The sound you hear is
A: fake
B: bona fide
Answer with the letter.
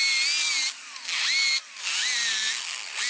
B